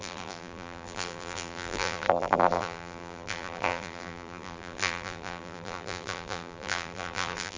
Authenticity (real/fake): fake